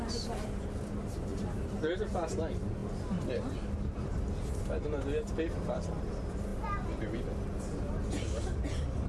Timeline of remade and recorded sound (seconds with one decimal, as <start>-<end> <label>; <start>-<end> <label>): 0.0-1.3 recorded; 1.3-2.1 remade; 2.1-9.1 recorded